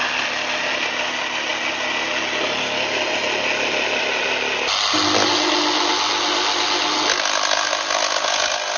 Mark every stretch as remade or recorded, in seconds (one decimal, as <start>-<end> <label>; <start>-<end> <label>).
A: 0.0-8.8 recorded